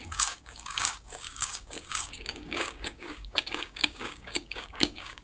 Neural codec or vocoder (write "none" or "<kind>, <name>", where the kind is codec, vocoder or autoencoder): codec, DAC